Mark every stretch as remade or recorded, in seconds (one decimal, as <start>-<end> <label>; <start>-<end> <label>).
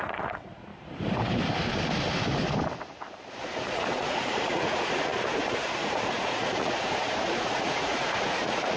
0.0-0.7 remade; 0.7-3.3 recorded; 3.3-8.8 remade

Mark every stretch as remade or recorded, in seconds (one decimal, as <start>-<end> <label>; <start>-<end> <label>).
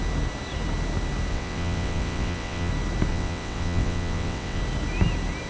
0.0-1.3 recorded; 1.3-2.7 remade; 2.7-3.1 recorded; 3.1-4.6 remade; 4.6-5.5 recorded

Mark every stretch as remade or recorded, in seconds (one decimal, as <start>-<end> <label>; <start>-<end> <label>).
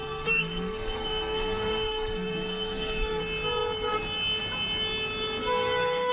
0.0-3.2 remade; 3.2-5.4 recorded; 5.4-6.1 remade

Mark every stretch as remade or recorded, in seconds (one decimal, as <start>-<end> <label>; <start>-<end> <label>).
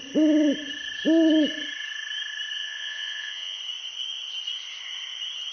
0.0-2.6 recorded; 2.6-3.6 remade; 3.6-5.5 recorded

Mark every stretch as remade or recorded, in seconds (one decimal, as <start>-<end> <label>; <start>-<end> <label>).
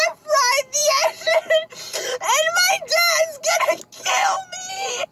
0.0-5.1 recorded